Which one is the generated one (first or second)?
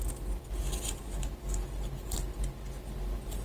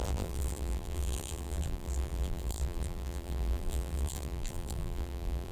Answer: second